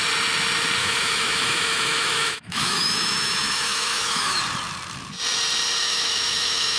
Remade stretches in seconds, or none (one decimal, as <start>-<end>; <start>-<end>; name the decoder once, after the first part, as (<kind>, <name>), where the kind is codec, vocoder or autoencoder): 0.8-4.4 (autoencoder, DAC-VAE); 5.8-6.8